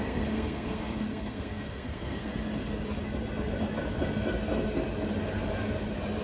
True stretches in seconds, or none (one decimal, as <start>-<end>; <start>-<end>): 2.3-6.2

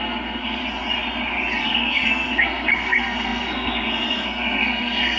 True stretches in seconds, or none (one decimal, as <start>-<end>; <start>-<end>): 0.6-1.6

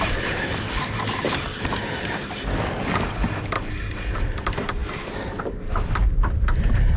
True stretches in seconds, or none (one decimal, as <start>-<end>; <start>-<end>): 0.0-7.0

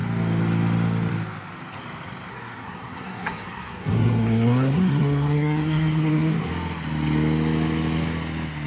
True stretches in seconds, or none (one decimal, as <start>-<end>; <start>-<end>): 0.0-2.3; 6.5-8.7